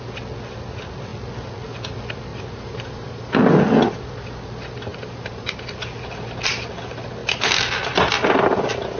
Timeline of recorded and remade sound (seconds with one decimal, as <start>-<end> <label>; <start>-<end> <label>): 0.0-2.3 recorded; 2.3-3.6 remade; 3.6-4.9 recorded; 4.9-5.5 remade; 5.5-9.0 recorded